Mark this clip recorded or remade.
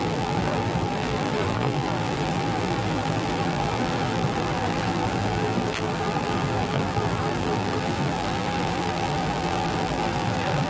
remade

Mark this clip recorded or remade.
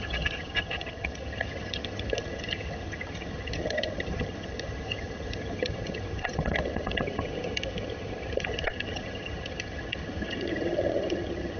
remade